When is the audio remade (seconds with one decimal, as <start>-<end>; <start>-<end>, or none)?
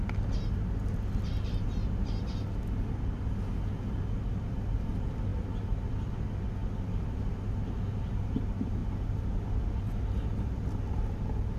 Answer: none